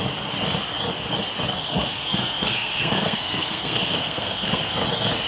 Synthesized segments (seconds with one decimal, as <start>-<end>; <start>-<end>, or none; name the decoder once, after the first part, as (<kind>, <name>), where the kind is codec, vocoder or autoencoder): 1.6-4.8 (codec, SNAC)

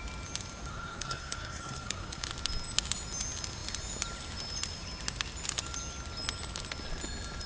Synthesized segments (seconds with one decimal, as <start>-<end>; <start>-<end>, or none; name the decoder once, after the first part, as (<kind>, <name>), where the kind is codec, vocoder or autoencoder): 0.7-2.3 (codec, SNAC)

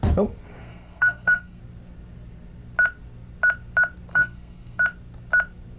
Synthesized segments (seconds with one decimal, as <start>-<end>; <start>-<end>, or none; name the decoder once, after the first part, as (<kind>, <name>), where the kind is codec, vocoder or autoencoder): 0.6-1.6 (codec, SNAC); 4.1-4.8

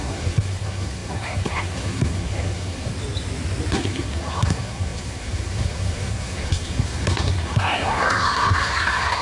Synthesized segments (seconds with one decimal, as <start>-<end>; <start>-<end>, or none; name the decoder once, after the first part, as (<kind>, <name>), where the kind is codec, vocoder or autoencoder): 0.0-2.9 (codec, SNAC); 3.7-9.2